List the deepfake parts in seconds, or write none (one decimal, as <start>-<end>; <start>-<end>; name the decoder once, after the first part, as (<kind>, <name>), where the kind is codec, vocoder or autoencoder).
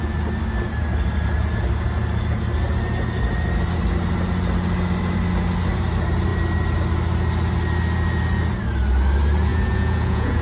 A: 9.5-10.4 (vocoder, Vocos)